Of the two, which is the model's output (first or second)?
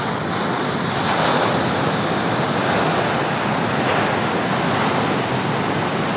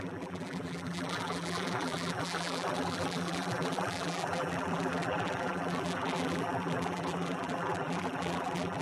second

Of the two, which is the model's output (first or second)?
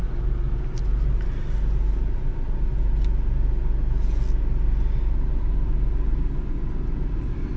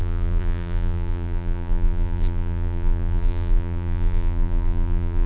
second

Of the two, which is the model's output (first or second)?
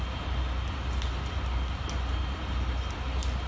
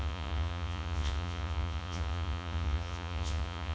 second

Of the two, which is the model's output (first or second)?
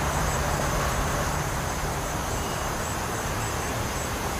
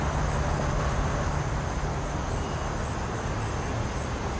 first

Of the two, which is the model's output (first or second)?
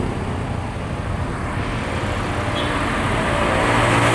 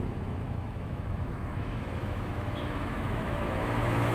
second